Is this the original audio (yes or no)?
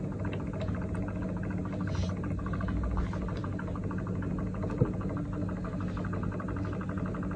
yes